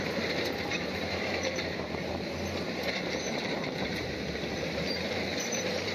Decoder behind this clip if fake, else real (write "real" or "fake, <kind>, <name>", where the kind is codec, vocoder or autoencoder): fake, vocoder, BigVGAN v2